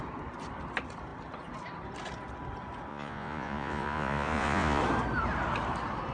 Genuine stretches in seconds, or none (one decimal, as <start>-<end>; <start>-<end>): 0.0-2.9; 4.8-6.1